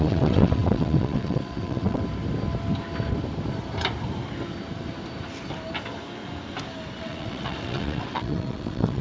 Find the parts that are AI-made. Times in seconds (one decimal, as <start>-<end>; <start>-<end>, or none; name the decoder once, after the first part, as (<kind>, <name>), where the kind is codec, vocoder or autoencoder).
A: 0.0-2.0 (vocoder, WaveNeXt); 7.0-9.0